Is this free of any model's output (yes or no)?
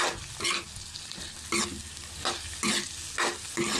yes